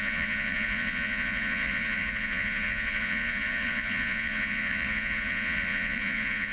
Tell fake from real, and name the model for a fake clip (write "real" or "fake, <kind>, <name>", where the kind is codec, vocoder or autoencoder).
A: fake, vocoder, Vocos